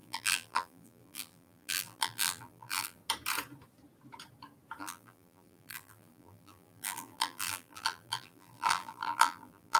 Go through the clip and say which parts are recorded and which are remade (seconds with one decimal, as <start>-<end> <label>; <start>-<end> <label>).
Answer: 0.0-3.0 remade; 3.0-4.8 recorded; 4.8-9.8 remade